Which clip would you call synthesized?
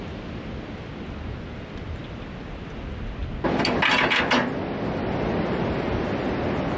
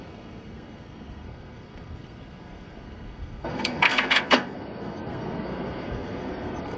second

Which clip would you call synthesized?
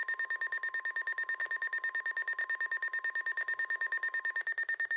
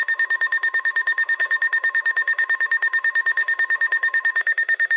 second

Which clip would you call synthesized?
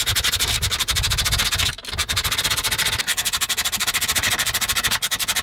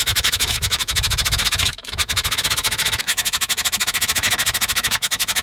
second